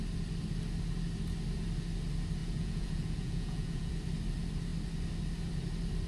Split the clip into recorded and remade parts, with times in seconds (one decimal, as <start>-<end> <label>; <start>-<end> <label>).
0.0-2.4 recorded; 2.4-3.9 remade; 3.9-6.1 recorded